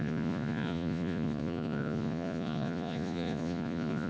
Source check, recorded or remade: remade